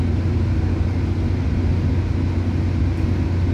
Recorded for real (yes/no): yes